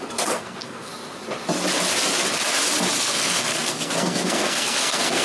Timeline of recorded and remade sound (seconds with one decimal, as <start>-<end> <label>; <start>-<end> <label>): 0.0-0.9 remade; 0.9-3.0 recorded; 3.0-5.2 remade